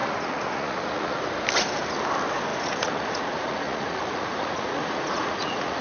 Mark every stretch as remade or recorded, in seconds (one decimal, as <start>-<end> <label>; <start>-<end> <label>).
0.0-1.2 remade; 1.2-2.5 recorded; 2.5-5.8 remade